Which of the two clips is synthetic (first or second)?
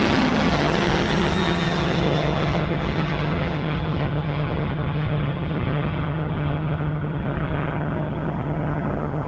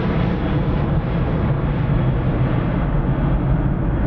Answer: first